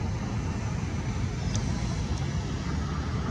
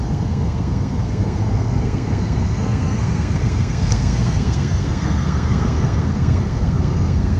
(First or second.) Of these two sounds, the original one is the first